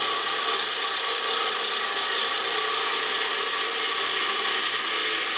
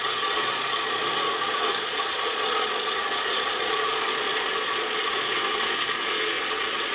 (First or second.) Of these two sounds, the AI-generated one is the second